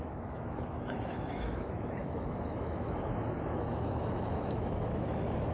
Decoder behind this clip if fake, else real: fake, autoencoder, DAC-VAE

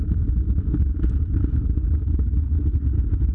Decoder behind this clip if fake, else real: real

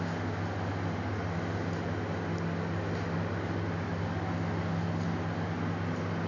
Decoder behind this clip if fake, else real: real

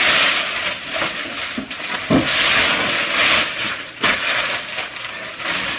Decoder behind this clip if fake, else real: real